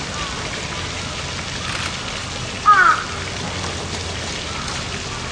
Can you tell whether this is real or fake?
real